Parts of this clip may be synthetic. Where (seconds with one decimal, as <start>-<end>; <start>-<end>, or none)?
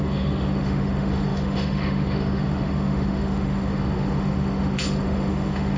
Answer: 0.0-5.8